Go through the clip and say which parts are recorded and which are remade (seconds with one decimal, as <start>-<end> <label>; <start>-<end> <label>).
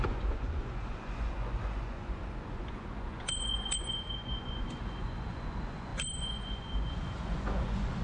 0.0-8.0 remade